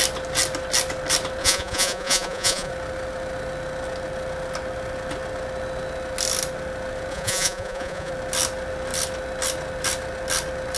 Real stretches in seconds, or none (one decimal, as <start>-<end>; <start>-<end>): 0.0-1.4; 2.7-7.1; 8.1-10.8